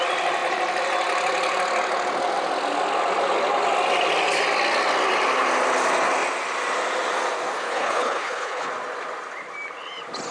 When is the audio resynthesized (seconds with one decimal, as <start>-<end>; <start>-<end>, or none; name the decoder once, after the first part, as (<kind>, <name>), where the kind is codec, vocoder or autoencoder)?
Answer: 7.6-8.7 (codec, HILCodec)